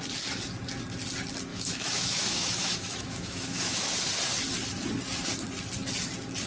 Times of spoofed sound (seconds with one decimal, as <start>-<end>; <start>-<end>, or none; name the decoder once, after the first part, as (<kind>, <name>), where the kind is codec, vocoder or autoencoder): 1.5-3.8 (autoencoder, DAC-VAE)